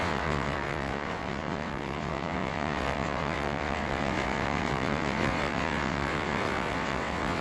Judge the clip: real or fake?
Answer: fake